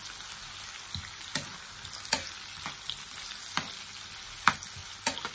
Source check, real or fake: real